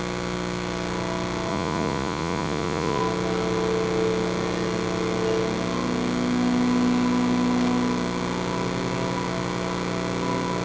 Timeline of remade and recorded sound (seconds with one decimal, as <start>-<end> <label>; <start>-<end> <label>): 0.0-1.5 recorded; 1.5-3.0 remade; 3.0-10.6 recorded